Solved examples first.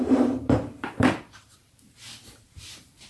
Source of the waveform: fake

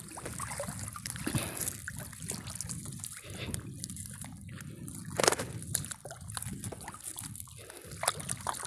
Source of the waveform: real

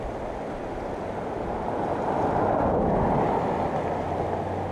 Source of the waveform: real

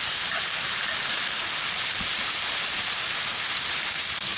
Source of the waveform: fake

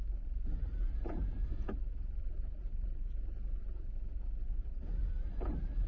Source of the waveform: fake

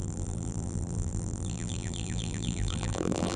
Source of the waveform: fake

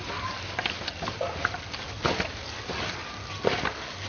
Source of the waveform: real